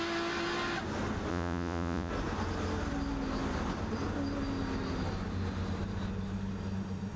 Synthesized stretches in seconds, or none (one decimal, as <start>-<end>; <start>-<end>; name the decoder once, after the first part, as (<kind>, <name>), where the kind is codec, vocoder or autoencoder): 1.3-2.1 (vocoder, Vocos)